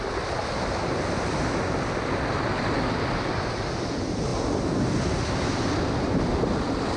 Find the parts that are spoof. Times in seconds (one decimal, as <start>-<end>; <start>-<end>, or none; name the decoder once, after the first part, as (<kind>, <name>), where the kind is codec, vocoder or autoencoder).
none